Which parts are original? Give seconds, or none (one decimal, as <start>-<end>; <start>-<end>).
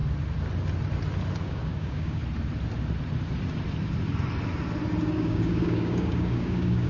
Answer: 0.0-1.4; 2.2-5.0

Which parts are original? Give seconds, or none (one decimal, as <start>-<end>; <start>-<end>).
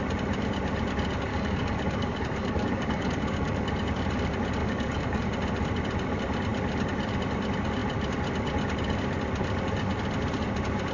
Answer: 0.0-1.3; 3.7-4.6; 5.2-10.9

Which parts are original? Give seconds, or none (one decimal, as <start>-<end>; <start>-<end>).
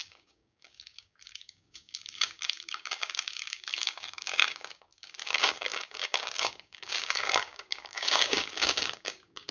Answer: none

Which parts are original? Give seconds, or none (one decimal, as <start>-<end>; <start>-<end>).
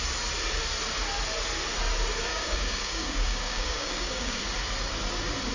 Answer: 0.0-2.3; 4.4-5.5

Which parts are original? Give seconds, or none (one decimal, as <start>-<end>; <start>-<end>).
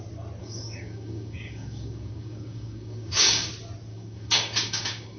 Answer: 0.0-0.4; 3.5-3.9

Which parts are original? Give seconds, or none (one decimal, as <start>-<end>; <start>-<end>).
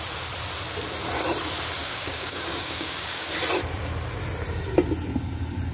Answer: 0.0-1.8; 3.3-5.7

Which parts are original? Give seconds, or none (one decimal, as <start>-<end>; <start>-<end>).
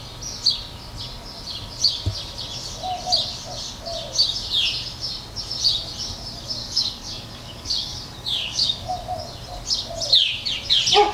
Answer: 0.0-6.6; 8.9-11.1